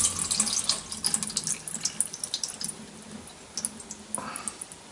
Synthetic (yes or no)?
no